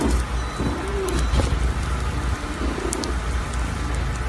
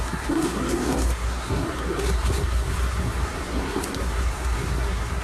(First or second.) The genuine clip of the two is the first